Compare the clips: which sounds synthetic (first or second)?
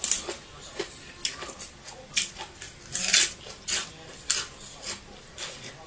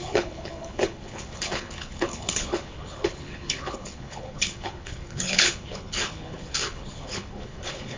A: second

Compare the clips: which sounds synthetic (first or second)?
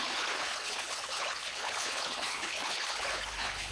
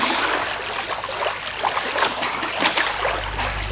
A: first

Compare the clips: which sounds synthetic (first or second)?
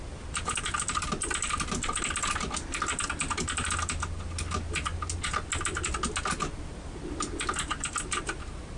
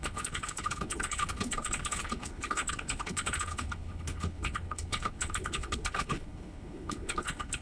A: second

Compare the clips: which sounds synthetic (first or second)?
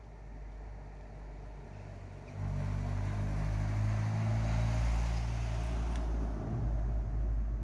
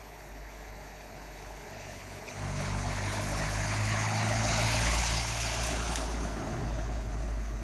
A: second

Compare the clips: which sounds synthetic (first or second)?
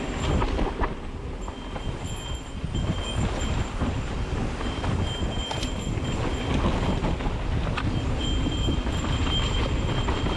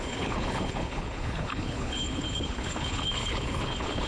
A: second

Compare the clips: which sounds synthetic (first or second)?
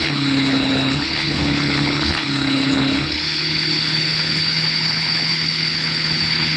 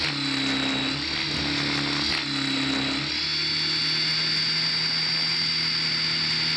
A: first